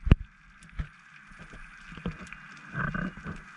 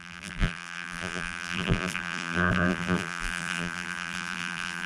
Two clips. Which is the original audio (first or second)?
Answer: first